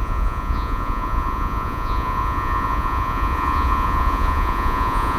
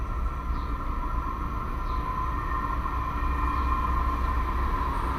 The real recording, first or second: second